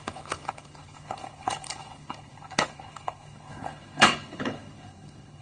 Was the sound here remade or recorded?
remade